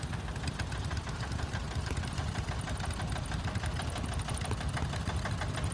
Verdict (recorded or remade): recorded